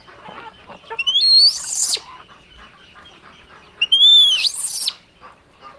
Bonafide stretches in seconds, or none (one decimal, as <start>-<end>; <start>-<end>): 0.0-5.8